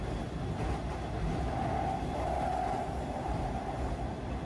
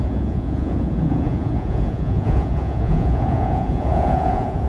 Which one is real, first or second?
first